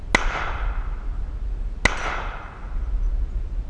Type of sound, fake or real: real